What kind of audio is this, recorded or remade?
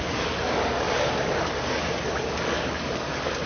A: remade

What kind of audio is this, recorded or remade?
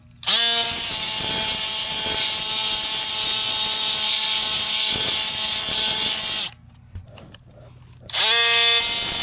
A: recorded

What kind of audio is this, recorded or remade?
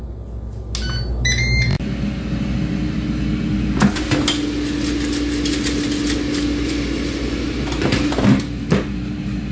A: recorded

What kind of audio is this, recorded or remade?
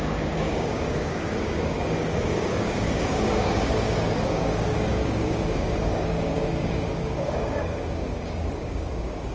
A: remade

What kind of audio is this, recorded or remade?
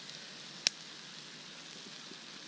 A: recorded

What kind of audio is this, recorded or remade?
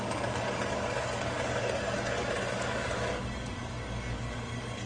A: remade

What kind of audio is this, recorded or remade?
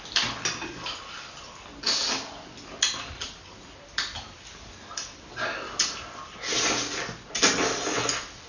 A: recorded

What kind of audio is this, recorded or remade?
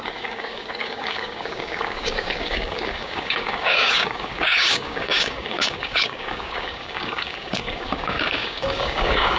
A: remade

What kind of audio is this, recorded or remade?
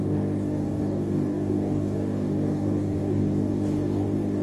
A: remade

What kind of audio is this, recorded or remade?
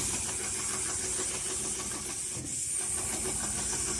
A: recorded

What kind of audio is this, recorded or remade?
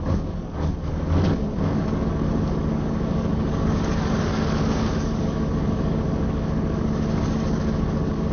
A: remade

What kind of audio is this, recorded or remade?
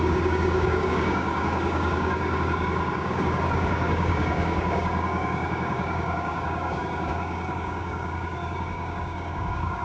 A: remade